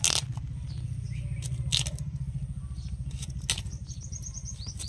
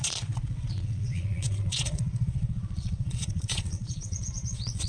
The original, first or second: first